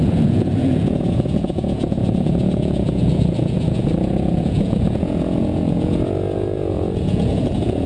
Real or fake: fake